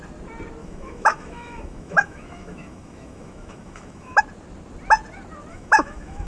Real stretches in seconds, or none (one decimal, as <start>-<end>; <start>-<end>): 0.0-0.6; 4.2-5.5